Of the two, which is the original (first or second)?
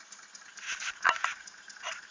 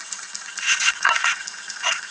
first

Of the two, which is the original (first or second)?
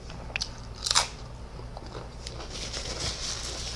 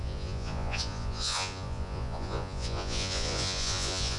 first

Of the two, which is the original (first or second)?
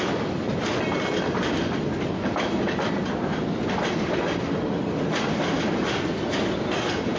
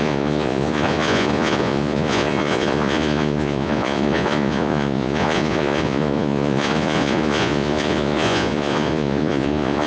first